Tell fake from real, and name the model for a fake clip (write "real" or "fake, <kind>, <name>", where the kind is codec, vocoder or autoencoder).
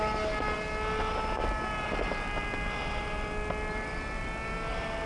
real